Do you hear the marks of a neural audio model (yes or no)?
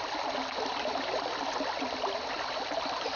no